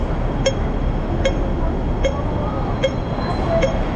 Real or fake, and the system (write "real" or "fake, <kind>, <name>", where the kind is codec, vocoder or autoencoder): real